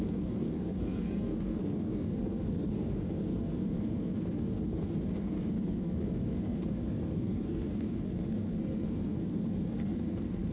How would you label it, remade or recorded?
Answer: remade